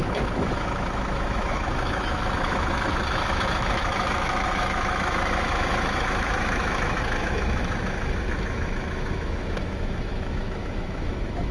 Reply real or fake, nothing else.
fake